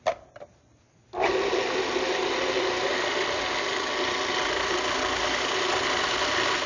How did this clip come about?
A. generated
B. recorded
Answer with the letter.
B